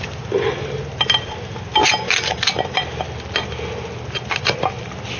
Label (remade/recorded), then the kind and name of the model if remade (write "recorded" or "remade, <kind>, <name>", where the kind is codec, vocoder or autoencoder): recorded